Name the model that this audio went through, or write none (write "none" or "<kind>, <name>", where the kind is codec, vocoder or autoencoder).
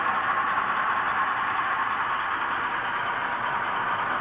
none